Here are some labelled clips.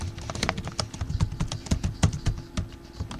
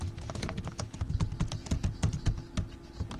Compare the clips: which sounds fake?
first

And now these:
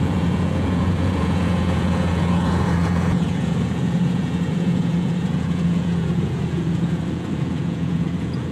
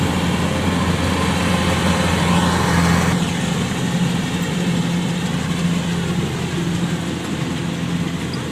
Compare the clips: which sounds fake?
first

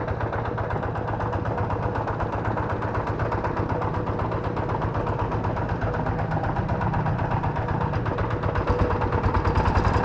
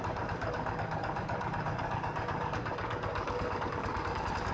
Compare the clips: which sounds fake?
second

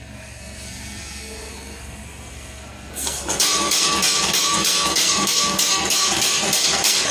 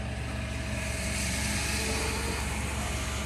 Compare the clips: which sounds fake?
first